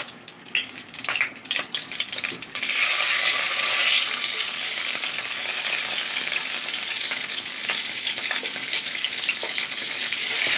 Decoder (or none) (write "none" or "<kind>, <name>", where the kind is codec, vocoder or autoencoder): codec, DAC